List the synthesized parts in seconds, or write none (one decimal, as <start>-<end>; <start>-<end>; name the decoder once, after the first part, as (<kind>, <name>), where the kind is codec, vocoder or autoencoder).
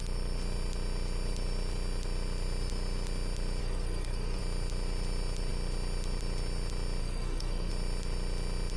3.6-4.4 (codec, SNAC); 7.0-7.7